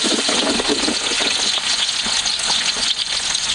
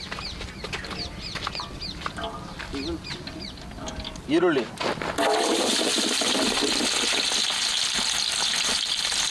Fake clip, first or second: first